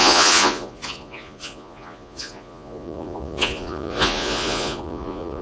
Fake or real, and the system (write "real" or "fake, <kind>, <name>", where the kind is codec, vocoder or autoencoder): fake, vocoder, Vocos